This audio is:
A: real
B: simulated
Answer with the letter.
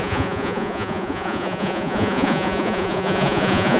B